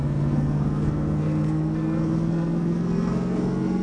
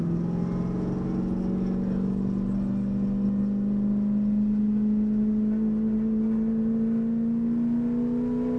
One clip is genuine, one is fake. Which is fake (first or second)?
first